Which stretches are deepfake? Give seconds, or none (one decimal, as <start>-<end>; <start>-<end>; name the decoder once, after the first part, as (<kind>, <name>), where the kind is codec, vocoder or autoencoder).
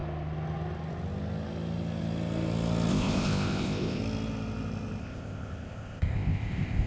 2.9-4.0 (codec, ZipCodec); 5.0-6.9